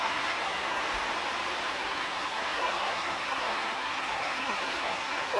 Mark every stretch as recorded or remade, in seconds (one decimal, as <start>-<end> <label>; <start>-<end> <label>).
0.0-0.8 remade; 0.8-1.7 recorded; 1.7-5.4 remade